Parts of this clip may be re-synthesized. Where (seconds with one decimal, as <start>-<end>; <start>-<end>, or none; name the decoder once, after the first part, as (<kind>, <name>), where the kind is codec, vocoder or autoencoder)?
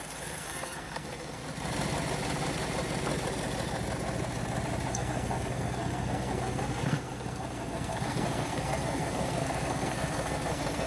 0.0-1.4 (codec, SNAC); 4.9-10.9